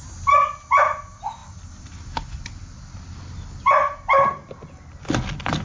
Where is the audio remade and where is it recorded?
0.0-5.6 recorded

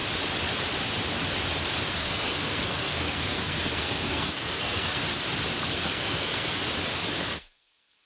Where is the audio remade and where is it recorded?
0.0-1.9 recorded; 1.9-5.0 remade; 5.0-5.7 recorded; 5.7-6.6 remade; 6.6-7.2 recorded; 7.2-8.1 remade

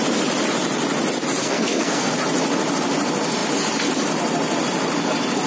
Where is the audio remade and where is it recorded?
0.0-1.4 recorded; 1.4-2.1 remade; 2.1-5.5 recorded

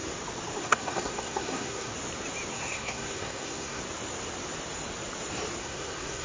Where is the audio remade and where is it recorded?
0.0-0.6 recorded; 0.6-1.9 remade; 1.9-2.5 recorded; 2.5-3.8 remade; 3.8-5.6 recorded; 5.6-6.2 remade

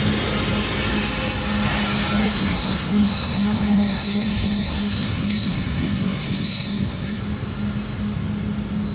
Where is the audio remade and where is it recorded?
0.0-2.2 recorded; 2.2-7.2 remade; 7.2-8.9 recorded